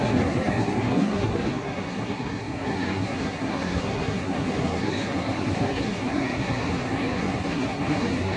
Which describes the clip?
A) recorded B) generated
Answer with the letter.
B